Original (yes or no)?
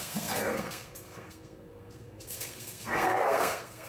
no